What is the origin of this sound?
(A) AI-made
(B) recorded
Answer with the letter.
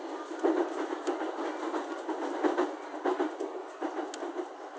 B